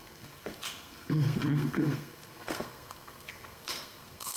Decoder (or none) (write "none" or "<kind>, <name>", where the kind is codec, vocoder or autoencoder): codec, SNAC